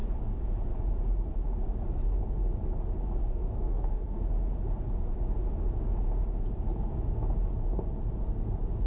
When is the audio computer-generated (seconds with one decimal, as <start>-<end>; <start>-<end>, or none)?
3.2-4.2